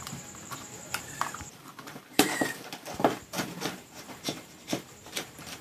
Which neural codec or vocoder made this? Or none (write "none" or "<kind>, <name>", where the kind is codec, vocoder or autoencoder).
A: vocoder, BigVGAN v2